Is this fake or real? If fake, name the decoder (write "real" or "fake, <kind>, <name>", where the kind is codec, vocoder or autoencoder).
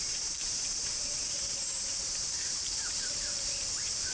fake, vocoder, BigVGAN v2